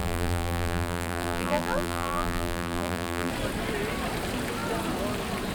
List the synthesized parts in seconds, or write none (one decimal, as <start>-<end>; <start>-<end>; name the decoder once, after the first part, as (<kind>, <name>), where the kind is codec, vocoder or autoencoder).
0.0-3.3 (vocoder, BigVGAN v2)